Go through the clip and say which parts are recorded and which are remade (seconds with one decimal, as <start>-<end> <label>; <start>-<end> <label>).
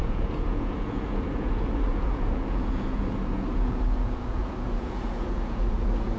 0.0-6.2 remade